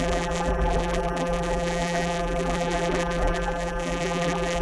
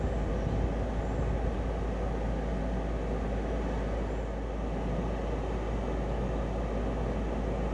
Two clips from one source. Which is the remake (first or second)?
first